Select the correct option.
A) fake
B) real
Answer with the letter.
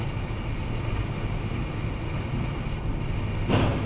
B